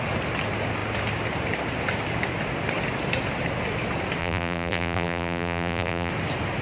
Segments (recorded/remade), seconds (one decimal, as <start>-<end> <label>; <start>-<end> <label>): 0.0-4.2 recorded; 4.2-6.1 remade; 6.1-6.6 recorded